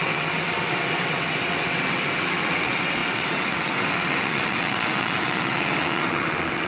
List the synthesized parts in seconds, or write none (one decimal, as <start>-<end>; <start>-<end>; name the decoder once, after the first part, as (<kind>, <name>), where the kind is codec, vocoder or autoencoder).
0.0-6.7 (vocoder, WaveNeXt)